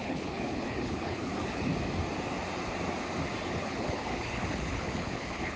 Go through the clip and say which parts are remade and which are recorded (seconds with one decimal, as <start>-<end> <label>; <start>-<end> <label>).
0.0-1.7 remade; 1.7-3.5 recorded; 3.5-5.6 remade